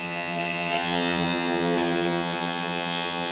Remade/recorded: remade